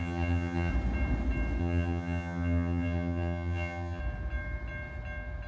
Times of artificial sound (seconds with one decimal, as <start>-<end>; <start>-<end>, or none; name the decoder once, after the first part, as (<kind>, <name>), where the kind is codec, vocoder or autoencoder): 0.0-0.7 (vocoder, HiFi-GAN); 1.6-4.0